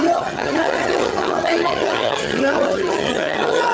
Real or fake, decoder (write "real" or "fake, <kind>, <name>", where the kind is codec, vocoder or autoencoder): fake, vocoder, HiFi-GAN